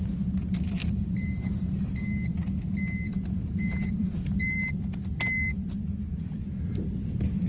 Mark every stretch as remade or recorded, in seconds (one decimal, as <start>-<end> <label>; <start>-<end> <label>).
0.0-0.8 recorded; 0.8-1.9 remade; 1.9-3.1 recorded; 3.1-4.8 remade; 4.8-5.5 recorded; 5.5-6.4 remade; 6.4-7.5 recorded